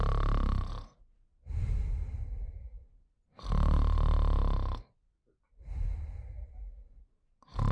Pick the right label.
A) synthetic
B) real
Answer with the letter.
B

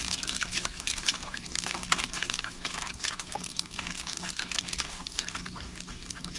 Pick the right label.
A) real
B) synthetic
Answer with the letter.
B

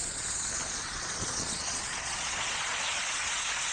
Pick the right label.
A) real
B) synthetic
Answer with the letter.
B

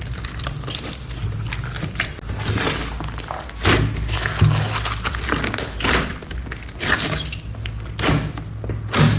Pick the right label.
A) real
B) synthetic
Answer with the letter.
A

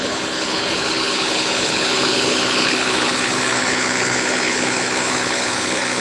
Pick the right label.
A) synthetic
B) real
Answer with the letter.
A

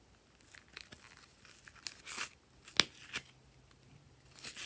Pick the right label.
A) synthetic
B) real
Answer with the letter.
B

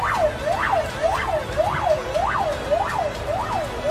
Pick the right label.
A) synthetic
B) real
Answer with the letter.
B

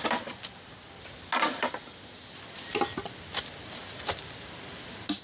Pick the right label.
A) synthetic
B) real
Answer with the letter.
B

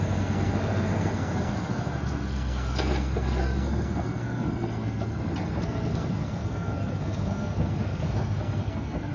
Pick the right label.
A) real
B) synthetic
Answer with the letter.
B